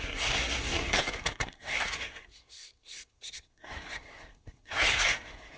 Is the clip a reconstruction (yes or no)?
yes